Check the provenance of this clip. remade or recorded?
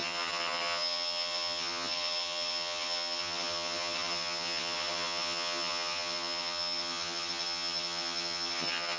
remade